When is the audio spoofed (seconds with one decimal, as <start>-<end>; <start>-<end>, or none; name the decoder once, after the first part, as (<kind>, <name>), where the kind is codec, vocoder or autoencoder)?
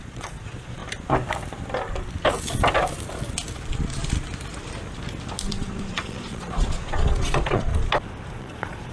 0.0-0.8 (vocoder, Vocos); 5.5-7.7; 8.3-8.9